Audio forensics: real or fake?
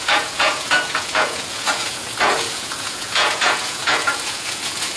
fake